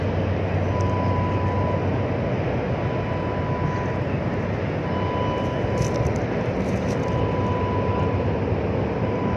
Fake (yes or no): no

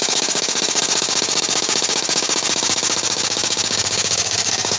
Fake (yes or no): yes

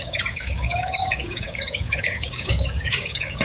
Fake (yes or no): yes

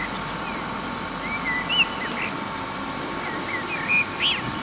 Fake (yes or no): no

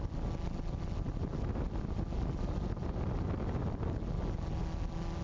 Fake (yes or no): no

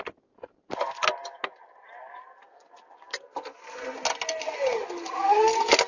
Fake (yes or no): no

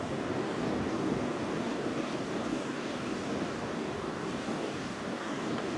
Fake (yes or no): yes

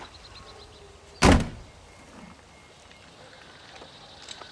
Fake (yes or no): no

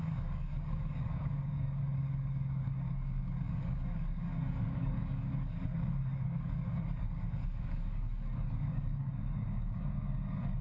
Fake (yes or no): yes